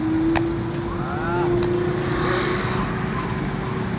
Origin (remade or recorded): recorded